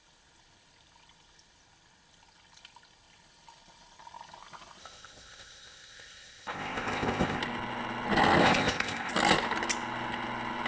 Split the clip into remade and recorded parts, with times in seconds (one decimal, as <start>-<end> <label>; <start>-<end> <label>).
0.0-4.8 recorded; 4.8-7.4 remade; 7.4-8.4 recorded; 8.4-9.1 remade; 9.1-10.7 recorded

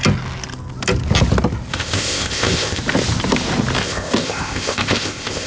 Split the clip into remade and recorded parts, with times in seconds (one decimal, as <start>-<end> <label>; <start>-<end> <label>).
0.0-1.7 recorded; 1.7-2.8 remade; 2.8-3.8 recorded; 3.8-5.5 remade

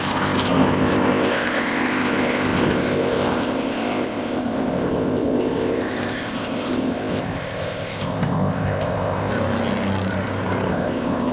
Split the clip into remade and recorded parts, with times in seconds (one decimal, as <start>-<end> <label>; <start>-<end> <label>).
0.0-9.3 remade; 9.3-10.7 recorded; 10.7-11.3 remade

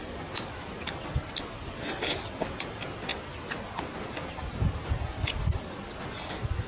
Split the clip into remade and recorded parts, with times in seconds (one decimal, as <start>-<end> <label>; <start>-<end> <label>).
0.0-6.7 recorded

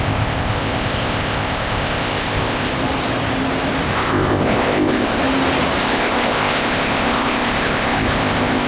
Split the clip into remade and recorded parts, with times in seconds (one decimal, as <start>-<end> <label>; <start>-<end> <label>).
0.0-2.7 remade; 2.7-3.9 recorded; 3.9-5.2 remade; 5.2-5.8 recorded; 5.8-8.7 remade